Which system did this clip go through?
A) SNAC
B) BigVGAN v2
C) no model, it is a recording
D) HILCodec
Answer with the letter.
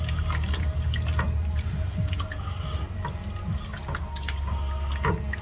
C